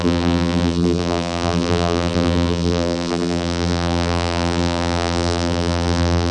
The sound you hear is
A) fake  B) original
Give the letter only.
A